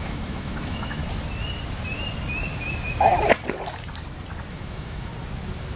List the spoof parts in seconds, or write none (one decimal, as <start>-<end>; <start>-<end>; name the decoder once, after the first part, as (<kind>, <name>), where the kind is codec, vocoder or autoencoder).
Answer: 0.0-1.0 (autoencoder, DAC-VAE); 4.5-5.1